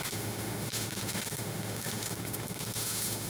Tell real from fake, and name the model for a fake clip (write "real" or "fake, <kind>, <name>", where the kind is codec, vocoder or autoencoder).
fake, autoencoder, DAC-VAE